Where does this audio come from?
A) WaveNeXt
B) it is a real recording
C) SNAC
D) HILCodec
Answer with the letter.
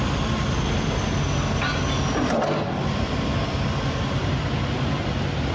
B